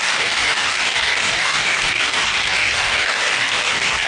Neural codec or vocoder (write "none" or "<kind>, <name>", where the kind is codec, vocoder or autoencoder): codec, DAC